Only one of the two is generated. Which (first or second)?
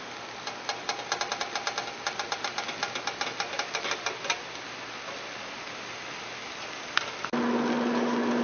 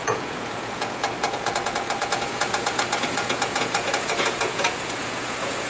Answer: second